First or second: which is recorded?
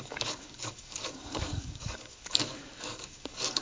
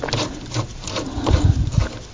second